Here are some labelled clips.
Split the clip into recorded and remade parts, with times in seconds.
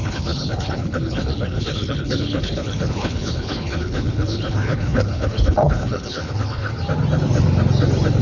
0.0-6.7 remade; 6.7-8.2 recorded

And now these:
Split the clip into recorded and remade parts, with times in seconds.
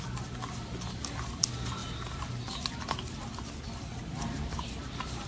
0.0-5.3 recorded